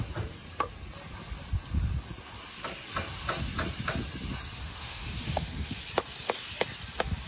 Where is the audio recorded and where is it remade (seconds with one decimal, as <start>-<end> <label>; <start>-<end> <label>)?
0.0-4.6 recorded; 4.6-5.8 remade; 5.8-7.3 recorded